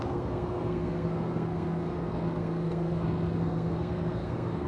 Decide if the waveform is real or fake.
fake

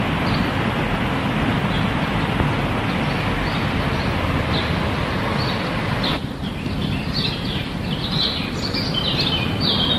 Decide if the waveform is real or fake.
real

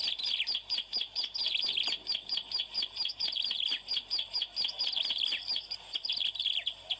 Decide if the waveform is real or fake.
real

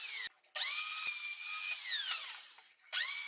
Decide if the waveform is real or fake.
real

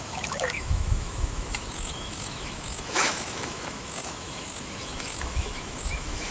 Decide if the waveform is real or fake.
fake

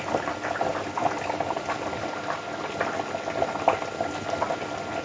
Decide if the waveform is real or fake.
real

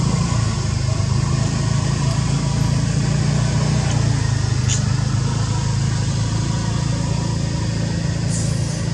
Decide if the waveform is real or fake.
real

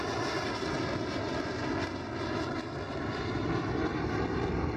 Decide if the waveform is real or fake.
real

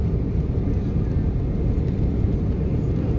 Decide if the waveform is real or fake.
real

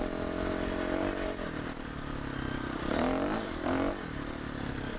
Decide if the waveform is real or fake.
real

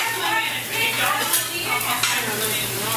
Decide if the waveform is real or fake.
real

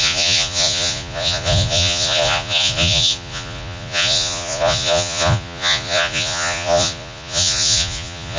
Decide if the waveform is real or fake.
fake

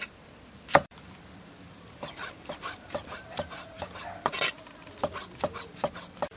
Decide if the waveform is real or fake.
fake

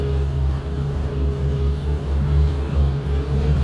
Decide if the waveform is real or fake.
fake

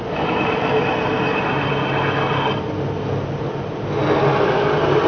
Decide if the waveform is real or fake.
real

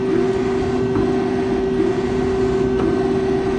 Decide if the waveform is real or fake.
real